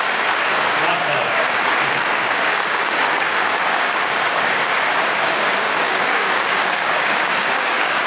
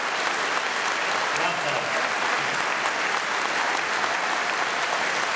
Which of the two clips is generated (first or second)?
first